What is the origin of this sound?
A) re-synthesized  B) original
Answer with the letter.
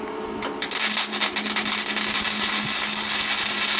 B